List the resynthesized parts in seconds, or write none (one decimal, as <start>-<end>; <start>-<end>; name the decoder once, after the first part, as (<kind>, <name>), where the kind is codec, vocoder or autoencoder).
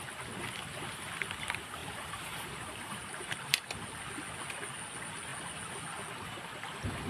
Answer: 1.8-3.6 (vocoder, BigVGAN v2)